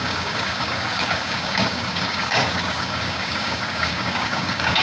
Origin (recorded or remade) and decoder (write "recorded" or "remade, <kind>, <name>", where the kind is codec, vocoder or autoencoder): remade, codec, DAC